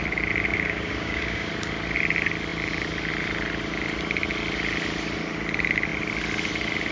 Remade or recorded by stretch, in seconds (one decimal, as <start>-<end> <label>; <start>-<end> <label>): 0.0-0.5 recorded; 0.5-1.5 remade; 1.5-6.9 recorded